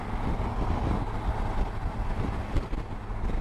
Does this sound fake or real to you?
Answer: real